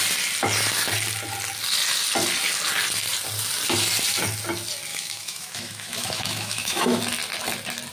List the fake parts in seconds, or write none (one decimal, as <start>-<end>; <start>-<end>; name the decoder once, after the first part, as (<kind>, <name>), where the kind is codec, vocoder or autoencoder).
4.9-7.0 (autoencoder, DAC-VAE)